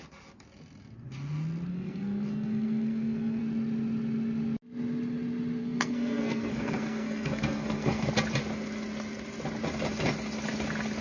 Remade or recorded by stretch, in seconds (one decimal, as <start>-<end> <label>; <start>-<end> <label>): 0.0-1.7 recorded; 1.7-3.4 remade; 3.4-5.6 recorded; 5.6-8.1 remade; 8.1-11.0 recorded